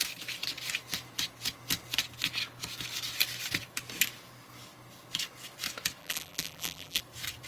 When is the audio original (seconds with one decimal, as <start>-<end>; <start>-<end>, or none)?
0.0-6.0; 7.0-7.5